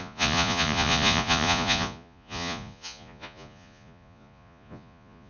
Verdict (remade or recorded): remade